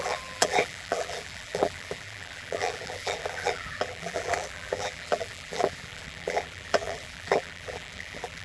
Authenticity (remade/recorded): remade